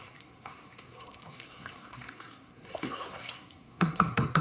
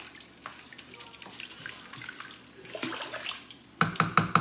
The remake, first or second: first